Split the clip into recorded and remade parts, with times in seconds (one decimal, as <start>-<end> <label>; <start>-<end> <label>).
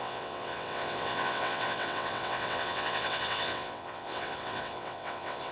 0.0-5.5 remade